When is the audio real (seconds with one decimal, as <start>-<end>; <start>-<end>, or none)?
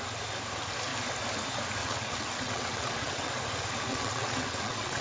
0.0-1.8; 3.4-3.9